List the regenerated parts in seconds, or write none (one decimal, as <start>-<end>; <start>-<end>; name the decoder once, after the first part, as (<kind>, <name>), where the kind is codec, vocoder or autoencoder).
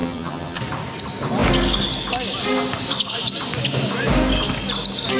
0.0-0.6 (vocoder, HiFi-GAN)